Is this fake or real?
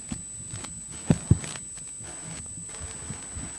real